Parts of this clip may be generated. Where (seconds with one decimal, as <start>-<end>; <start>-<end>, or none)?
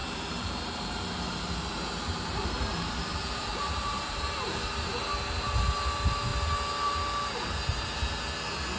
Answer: 0.0-4.9